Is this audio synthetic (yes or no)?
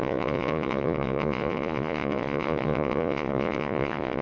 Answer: yes